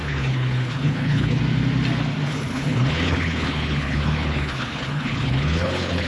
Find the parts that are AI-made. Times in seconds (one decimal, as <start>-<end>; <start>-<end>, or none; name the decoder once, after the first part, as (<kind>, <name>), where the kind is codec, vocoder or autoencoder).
0.0-1.4 (codec, HILCodec); 2.3-6.1